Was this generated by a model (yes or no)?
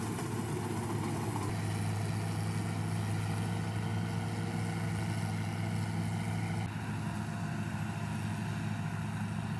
no